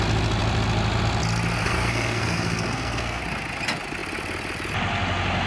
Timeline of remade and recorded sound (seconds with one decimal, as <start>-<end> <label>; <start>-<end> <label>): 0.0-1.6 recorded; 1.6-3.2 remade; 3.2-5.5 recorded